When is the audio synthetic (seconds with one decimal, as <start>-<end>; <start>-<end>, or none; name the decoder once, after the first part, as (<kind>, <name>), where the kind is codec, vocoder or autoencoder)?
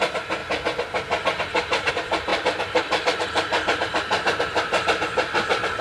0.0-0.4 (vocoder, BigVGAN v2); 1.9-5.8